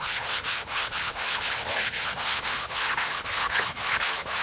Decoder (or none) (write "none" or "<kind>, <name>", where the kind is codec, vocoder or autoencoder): codec, HILCodec